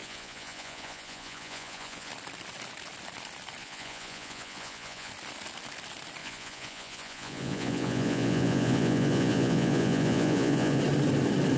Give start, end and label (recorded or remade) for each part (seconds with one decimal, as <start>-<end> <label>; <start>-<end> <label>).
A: 0.0-2.1 remade; 2.1-3.6 recorded; 3.6-5.1 remade; 5.1-6.2 recorded; 6.2-10.8 remade; 10.8-11.6 recorded